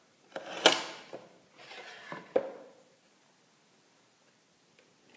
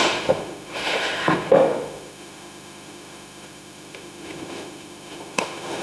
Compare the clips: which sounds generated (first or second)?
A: second